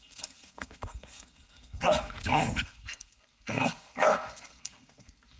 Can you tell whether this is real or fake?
fake